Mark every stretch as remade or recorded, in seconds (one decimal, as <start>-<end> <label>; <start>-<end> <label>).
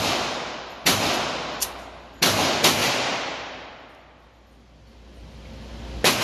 0.0-2.8 recorded; 2.8-3.7 remade; 3.7-6.2 recorded